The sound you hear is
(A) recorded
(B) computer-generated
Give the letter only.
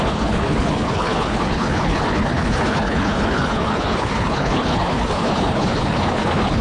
B